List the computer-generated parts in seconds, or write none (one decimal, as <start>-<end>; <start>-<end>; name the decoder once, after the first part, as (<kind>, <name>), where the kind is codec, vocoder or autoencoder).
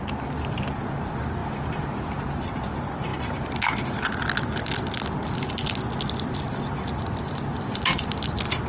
none